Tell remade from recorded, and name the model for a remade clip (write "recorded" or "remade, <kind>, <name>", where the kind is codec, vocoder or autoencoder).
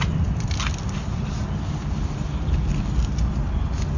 recorded